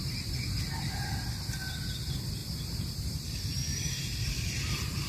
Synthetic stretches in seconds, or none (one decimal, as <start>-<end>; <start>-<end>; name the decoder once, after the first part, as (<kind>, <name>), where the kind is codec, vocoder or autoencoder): 2.4-4.5 (vocoder, BigVGAN v2)